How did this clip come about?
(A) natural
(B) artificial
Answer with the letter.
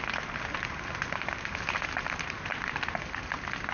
A